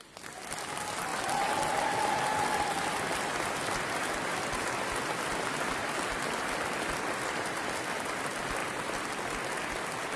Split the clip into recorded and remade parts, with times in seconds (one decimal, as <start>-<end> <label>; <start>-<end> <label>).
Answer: 0.0-10.2 recorded